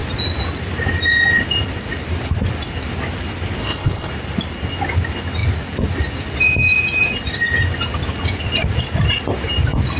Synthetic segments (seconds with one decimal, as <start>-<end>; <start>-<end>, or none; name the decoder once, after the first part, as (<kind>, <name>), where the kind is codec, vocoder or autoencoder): 3.6-4.1 (codec, HILCodec)